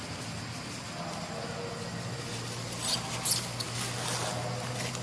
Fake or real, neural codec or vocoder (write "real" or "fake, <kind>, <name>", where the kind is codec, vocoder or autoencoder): real